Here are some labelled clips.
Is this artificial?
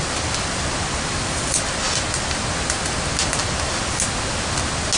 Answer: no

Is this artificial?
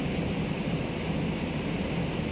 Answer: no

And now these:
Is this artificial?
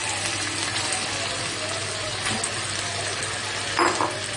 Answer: no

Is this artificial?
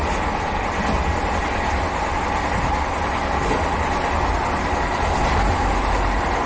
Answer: no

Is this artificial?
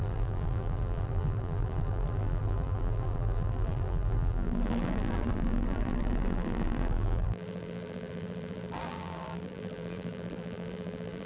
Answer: yes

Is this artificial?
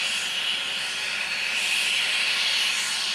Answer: no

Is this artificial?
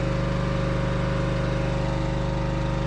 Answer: no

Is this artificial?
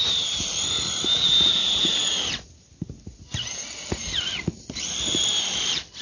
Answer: no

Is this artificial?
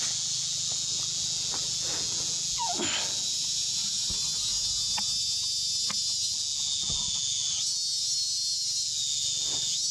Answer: no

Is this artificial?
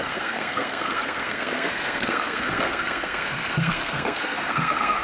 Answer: yes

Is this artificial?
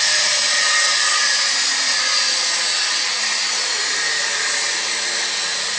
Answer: yes